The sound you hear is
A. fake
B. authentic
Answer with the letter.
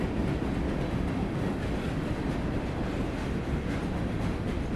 B